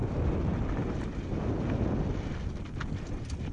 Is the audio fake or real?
real